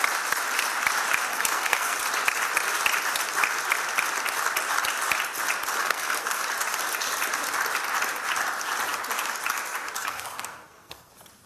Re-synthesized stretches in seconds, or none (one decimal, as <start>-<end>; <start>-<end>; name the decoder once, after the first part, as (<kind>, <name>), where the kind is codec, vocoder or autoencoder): 1.3-2.0 (codec, SNAC); 5.8-6.4; 10.0-11.1